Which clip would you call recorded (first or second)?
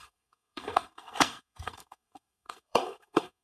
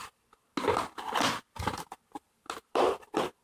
second